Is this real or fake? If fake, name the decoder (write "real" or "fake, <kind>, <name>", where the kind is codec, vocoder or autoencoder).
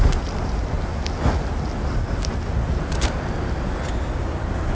real